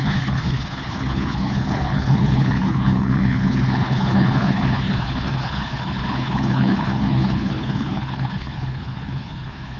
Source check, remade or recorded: remade